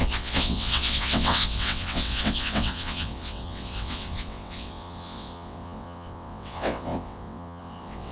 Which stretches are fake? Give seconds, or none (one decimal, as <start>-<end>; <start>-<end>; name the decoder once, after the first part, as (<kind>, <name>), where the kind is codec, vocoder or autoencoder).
0.0-8.1 (vocoder, WaveNeXt)